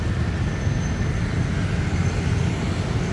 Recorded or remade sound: recorded